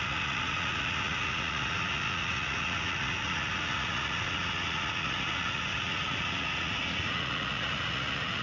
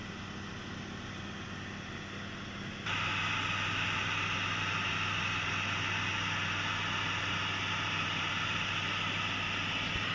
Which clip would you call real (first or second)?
second